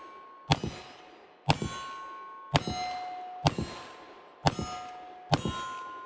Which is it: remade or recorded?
recorded